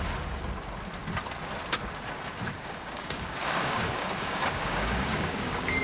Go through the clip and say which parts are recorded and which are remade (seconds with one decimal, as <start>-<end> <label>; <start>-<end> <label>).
0.0-2.5 recorded; 2.5-5.8 remade